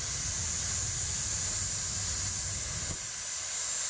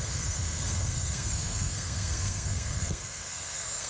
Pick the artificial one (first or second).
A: second